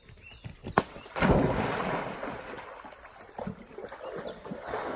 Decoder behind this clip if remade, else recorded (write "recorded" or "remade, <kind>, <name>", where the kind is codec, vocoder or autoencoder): recorded